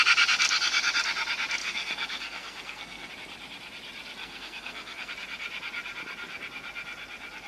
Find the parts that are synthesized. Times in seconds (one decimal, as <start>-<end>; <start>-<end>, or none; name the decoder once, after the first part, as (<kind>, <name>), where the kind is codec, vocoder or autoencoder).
1.6-3.1 (codec, SNAC); 4.2-5.1